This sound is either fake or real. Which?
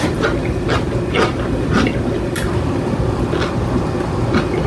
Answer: real